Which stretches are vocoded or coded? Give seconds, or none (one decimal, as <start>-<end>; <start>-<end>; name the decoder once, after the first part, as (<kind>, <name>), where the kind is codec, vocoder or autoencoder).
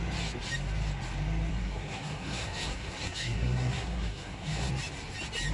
1.5-4.7 (codec, SNAC)